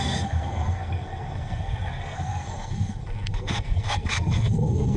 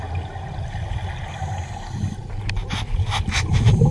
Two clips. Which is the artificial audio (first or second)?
first